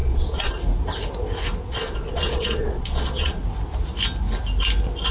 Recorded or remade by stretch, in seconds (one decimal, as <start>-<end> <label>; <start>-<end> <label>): 0.0-0.5 remade; 0.5-1.7 recorded; 1.7-3.4 remade; 3.4-5.1 recorded